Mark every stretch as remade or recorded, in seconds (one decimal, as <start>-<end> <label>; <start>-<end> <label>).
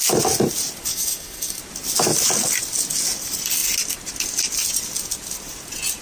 0.0-0.9 recorded; 0.9-1.6 remade; 1.6-6.0 recorded